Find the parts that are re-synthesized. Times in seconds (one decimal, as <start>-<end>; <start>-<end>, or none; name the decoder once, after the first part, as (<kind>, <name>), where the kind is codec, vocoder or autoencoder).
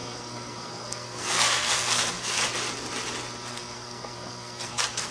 0.0-2.4 (codec, SNAC); 3.5-5.1